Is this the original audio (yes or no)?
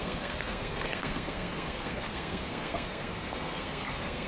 no